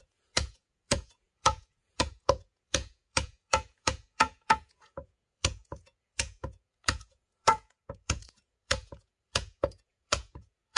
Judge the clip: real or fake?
fake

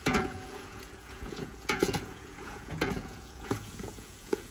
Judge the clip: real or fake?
fake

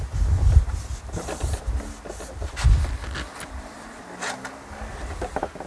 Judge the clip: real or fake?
real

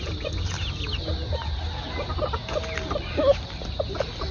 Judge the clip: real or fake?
real